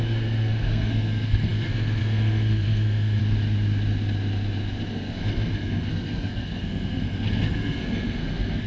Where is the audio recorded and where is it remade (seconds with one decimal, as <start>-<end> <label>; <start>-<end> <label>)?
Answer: 0.0-3.2 remade; 3.2-4.9 recorded; 4.9-8.7 remade